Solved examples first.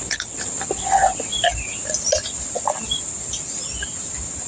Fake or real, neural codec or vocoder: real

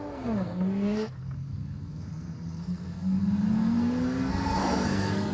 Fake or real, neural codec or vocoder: fake, codec, SNAC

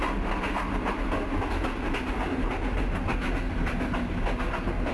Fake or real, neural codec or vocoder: real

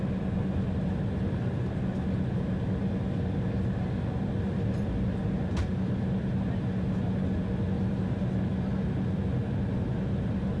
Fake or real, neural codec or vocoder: real